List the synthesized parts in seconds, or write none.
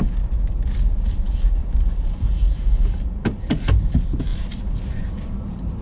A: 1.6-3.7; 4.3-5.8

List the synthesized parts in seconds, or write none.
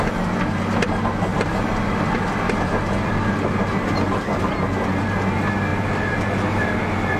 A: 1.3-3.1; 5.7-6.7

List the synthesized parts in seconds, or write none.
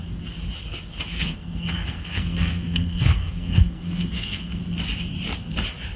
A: 1.1-4.6